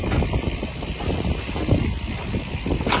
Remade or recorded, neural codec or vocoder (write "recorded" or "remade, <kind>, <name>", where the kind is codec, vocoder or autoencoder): recorded